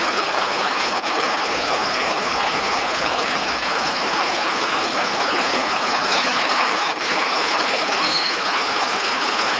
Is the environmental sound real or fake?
fake